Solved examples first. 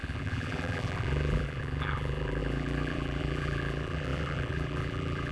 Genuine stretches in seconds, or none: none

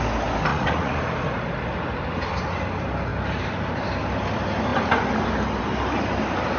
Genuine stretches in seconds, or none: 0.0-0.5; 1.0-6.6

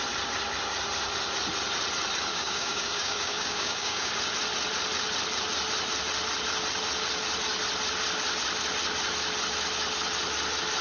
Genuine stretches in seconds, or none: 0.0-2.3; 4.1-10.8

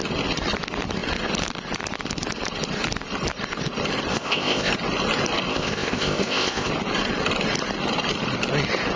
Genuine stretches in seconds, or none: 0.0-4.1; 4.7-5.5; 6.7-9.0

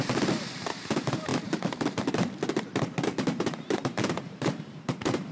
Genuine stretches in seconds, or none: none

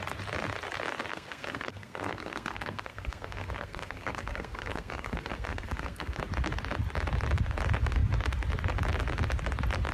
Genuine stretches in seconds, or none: 0.0-1.1; 6.2-9.9

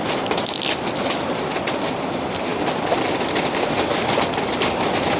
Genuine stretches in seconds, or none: 0.0-5.2